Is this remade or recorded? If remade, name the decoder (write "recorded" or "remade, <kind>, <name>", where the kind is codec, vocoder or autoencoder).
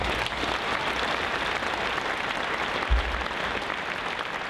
recorded